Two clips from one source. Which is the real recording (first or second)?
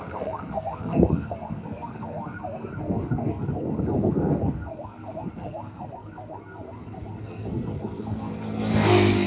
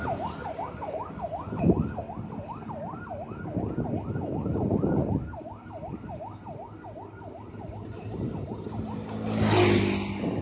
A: second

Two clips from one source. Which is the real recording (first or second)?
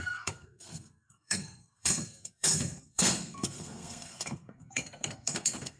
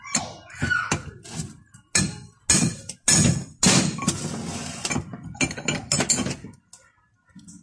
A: second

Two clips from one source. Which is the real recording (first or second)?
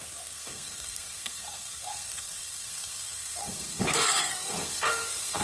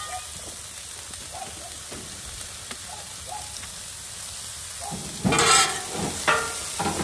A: second